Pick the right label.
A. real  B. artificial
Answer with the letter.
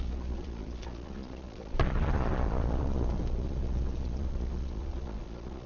B